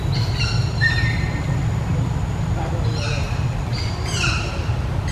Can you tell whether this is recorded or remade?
remade